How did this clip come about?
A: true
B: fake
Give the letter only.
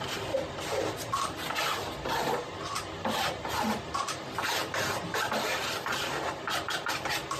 A